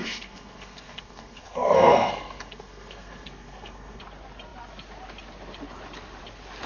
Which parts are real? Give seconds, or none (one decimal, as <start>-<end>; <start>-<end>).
4.0-6.7